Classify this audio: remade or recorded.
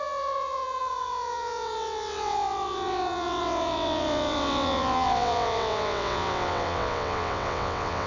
remade